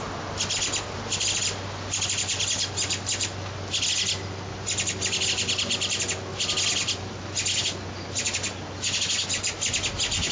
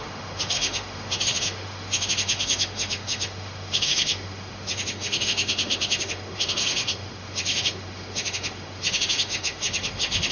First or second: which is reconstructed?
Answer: second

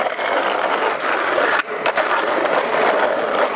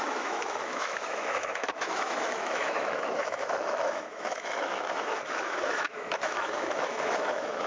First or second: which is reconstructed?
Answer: second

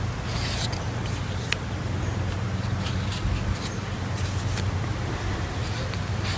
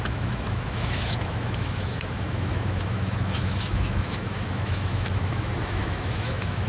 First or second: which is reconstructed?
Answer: second